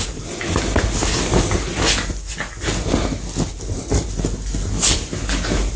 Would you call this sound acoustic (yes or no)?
yes